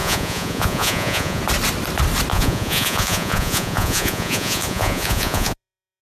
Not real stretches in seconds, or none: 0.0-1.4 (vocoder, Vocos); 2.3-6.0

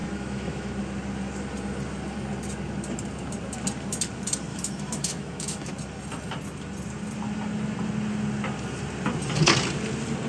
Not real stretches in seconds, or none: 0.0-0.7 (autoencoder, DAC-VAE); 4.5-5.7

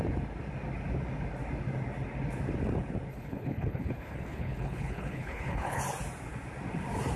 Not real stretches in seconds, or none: 3.1-5.8 (codec, HILCodec)